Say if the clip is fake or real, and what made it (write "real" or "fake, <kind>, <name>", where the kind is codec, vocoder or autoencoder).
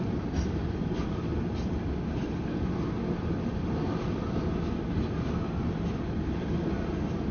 fake, vocoder, BigVGAN v2